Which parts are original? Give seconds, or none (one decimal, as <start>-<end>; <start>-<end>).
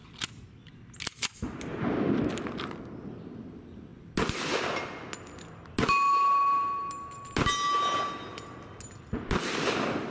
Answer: 0.0-10.1